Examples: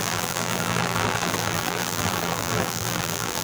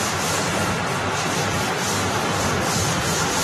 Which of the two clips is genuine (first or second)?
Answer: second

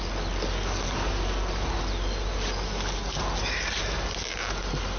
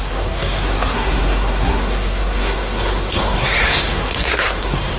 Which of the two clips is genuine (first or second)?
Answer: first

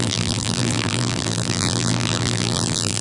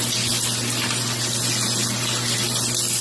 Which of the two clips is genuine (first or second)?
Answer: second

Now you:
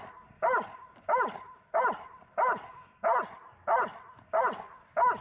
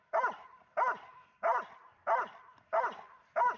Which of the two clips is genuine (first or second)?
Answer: first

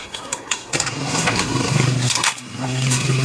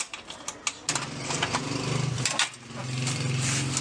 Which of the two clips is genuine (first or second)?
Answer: second